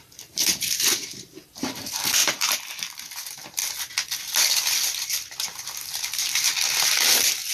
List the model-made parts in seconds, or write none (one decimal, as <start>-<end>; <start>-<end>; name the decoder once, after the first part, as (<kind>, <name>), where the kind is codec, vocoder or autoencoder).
0.0-3.6 (vocoder, BigVGAN v2); 6.1-6.5